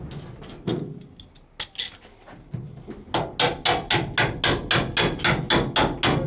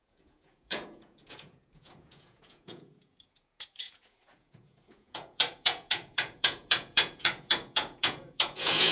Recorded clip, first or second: first